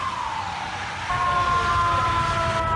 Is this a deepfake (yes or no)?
no